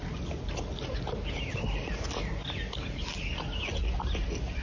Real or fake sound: real